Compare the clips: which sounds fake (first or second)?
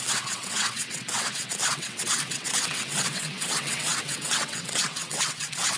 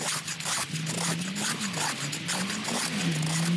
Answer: first